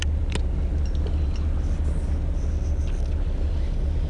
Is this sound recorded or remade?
recorded